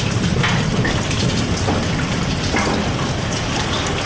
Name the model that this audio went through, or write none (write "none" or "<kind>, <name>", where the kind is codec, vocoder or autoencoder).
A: none